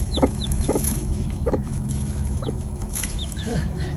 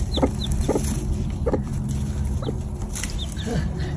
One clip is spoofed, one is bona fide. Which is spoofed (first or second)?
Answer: first